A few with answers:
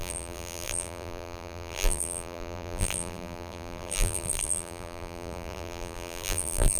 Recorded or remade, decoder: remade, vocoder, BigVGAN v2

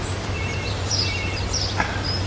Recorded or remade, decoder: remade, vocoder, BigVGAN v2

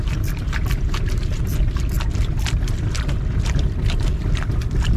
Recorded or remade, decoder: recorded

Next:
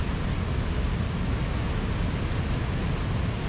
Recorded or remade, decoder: recorded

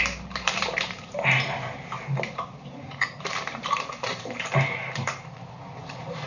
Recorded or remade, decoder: remade, vocoder, BigVGAN v2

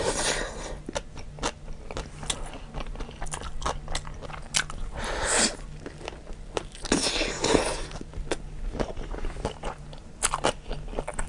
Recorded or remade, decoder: recorded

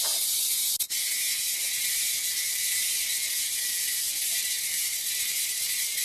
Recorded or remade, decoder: remade, vocoder, BigVGAN v2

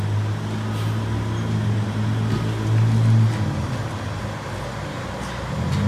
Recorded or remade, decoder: recorded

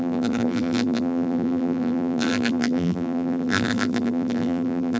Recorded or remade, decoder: remade, vocoder, BigVGAN v2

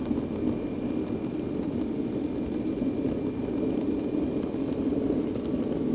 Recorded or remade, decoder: recorded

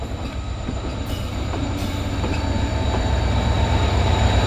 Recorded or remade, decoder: remade, vocoder, BigVGAN v2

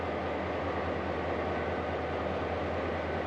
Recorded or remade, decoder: recorded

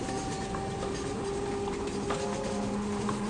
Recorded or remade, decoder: recorded